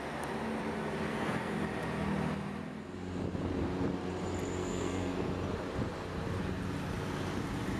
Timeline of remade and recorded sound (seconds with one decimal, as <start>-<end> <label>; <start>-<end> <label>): 0.0-1.1 recorded; 1.1-1.6 remade; 1.6-4.6 recorded; 4.6-5.3 remade; 5.3-7.8 recorded